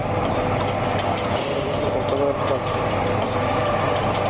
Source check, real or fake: fake